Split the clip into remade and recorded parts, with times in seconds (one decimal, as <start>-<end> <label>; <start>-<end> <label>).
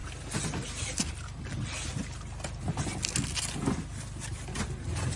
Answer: 0.0-5.2 recorded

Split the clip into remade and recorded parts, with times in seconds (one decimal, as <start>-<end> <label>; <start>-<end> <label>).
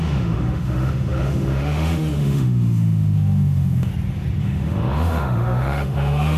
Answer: 0.0-3.9 remade; 3.9-4.4 recorded; 4.4-6.4 remade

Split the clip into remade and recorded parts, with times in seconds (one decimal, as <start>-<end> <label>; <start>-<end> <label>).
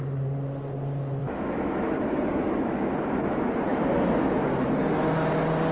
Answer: 0.0-1.2 recorded; 1.2-2.9 remade; 2.9-5.7 recorded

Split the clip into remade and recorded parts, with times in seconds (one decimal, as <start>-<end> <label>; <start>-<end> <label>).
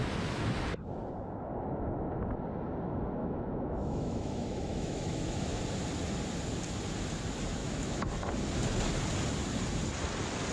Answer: 0.0-3.2 recorded; 3.2-5.6 remade; 5.6-7.6 recorded; 7.6-8.1 remade; 8.1-10.5 recorded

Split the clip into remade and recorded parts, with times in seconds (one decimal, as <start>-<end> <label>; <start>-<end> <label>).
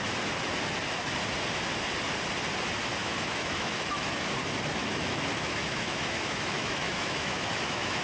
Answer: 0.0-3.0 recorded; 3.0-4.3 remade; 4.3-4.8 recorded; 4.8-8.0 remade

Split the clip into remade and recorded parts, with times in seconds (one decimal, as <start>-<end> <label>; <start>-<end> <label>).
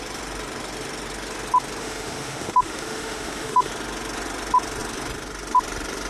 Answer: 0.0-1.8 recorded; 1.8-3.7 remade; 3.7-6.1 recorded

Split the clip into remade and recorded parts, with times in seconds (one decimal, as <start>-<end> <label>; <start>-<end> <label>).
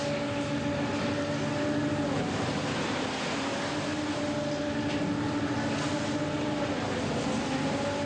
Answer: 0.0-8.1 recorded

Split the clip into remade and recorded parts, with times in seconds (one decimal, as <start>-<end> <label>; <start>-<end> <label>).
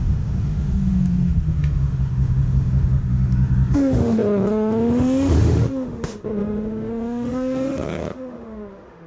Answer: 0.0-9.1 remade